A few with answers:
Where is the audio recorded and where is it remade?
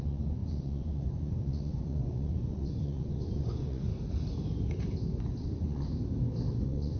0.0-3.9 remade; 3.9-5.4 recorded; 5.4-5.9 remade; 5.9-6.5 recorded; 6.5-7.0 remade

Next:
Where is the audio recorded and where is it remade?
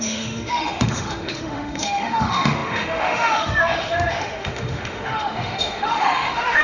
0.0-6.6 remade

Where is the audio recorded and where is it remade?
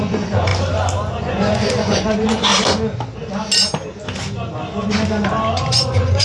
0.0-0.5 remade; 0.5-1.2 recorded; 1.2-2.5 remade; 2.5-5.7 recorded; 5.7-6.2 remade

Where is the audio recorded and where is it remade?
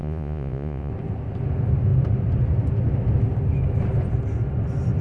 0.0-0.9 remade; 0.9-5.0 recorded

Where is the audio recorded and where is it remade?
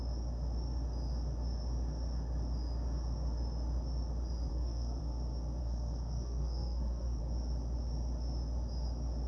0.0-4.5 recorded; 4.5-5.0 remade; 5.0-5.6 recorded; 5.6-7.2 remade; 7.2-9.3 recorded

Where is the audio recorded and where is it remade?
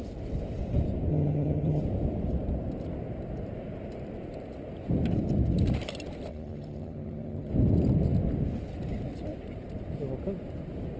0.0-1.1 recorded; 1.1-1.8 remade; 1.8-6.3 recorded; 6.3-7.5 remade; 7.5-11.0 recorded